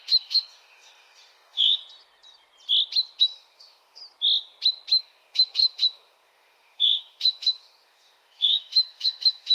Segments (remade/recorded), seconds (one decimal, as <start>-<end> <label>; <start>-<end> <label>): 0.0-1.8 remade; 1.8-3.2 recorded; 3.2-4.0 remade; 4.0-5.0 recorded; 5.0-9.5 remade